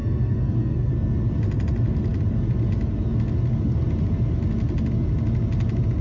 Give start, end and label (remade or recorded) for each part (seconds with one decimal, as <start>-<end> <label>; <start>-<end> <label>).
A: 0.0-0.9 remade; 0.9-6.0 recorded